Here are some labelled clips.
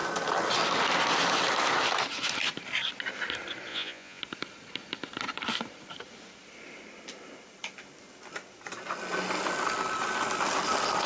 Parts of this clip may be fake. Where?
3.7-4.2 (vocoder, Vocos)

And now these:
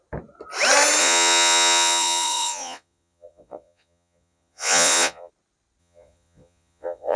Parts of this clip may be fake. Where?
1.0-5.3 (vocoder, Vocos); 5.8-7.2

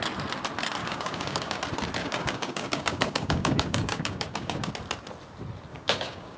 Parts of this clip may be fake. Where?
0.8-1.6 (codec, DAC); 2.0-4.7; 5.7-6.4

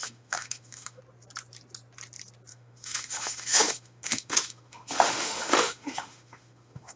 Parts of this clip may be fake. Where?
0.0-1.0 (autoencoder, DAC-VAE); 2.5-7.0

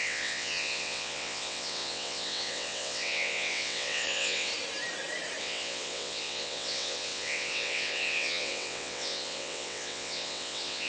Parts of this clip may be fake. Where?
0.0-4.5 (vocoder, WaveNeXt); 5.4-10.9